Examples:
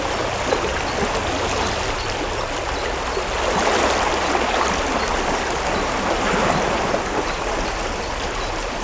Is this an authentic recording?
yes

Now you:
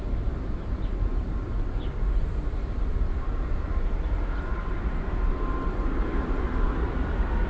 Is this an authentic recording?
yes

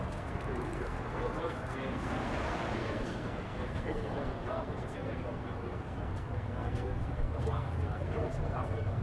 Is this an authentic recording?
no